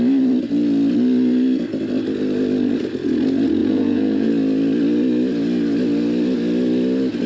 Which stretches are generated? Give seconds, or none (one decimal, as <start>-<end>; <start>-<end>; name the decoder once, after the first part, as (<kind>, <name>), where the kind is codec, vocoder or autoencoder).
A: 3.6-4.3 (vocoder, Vocos)